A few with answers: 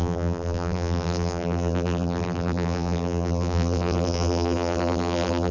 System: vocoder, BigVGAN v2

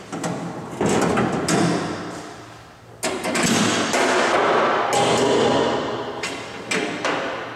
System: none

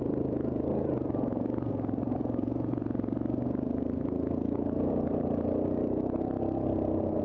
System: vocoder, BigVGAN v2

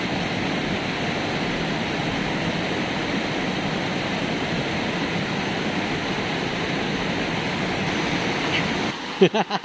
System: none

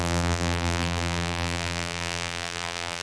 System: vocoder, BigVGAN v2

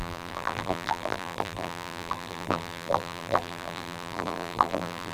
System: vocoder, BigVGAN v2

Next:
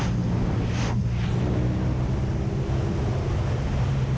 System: none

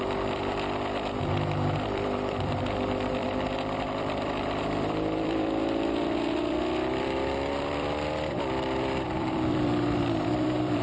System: vocoder, BigVGAN v2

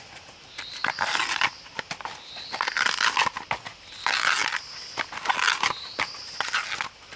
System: none